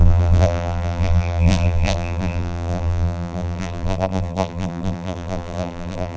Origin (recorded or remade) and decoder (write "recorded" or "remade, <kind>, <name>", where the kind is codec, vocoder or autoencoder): remade, vocoder, BigVGAN v2